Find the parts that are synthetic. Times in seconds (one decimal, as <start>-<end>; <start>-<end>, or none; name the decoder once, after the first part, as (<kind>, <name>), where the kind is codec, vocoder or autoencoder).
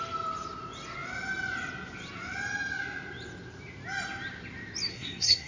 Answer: 4.9-5.5 (codec, SNAC)